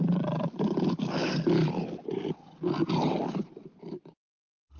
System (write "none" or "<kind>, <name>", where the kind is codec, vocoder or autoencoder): none